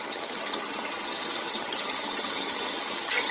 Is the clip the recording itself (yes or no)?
no